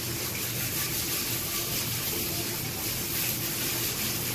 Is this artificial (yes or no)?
no